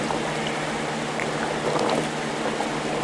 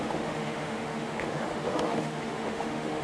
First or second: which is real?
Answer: first